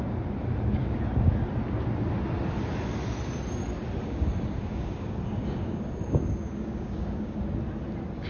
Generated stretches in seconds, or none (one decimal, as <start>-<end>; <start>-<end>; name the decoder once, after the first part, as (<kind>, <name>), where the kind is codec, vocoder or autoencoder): 4.0-7.4 (codec, DAC)